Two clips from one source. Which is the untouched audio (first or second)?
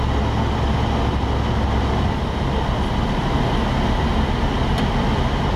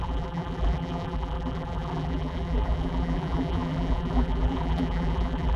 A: first